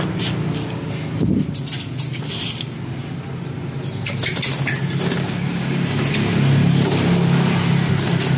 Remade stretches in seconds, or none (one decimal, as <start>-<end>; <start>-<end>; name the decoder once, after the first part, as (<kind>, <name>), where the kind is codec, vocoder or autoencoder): none